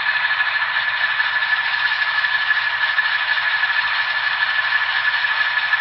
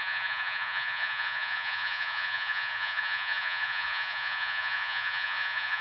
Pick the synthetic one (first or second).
second